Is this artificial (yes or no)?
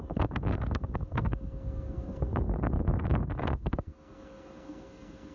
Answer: yes